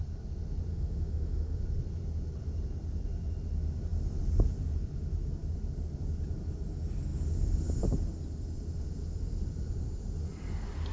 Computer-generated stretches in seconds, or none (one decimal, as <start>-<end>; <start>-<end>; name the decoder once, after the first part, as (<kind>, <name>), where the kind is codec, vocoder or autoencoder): 0.7-1.6 (autoencoder, DAC-VAE)